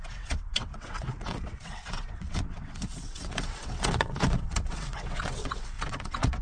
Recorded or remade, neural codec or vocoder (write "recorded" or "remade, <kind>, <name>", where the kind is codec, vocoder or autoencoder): remade, vocoder, WaveNeXt